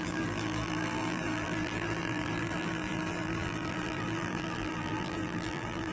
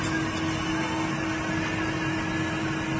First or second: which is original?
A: second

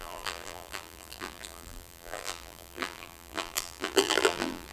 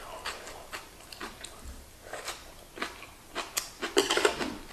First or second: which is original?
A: second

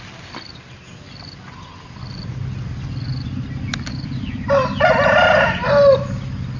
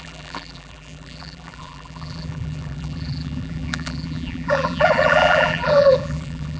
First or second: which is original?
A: first